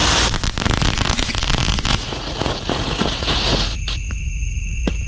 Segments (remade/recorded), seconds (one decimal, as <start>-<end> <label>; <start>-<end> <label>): 0.0-1.9 recorded; 1.9-5.1 remade